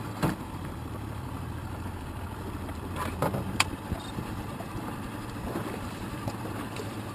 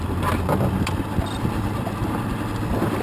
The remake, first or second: first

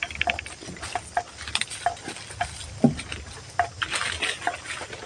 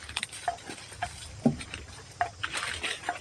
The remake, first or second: second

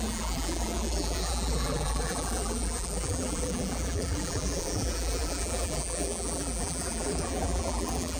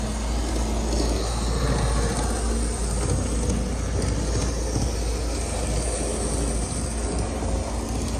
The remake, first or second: first